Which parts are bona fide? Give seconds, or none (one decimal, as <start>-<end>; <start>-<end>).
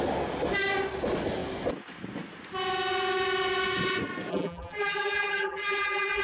0.0-4.3